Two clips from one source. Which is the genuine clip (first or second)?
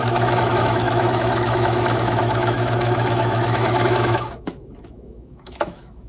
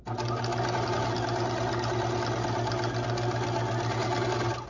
second